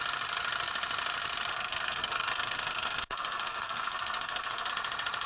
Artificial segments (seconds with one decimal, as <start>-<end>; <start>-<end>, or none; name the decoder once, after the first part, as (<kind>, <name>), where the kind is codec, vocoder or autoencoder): 1.5-4.7 (codec, SNAC)